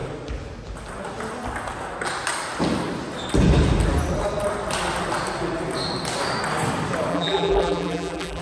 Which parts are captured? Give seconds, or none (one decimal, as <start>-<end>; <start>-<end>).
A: 0.0-7.1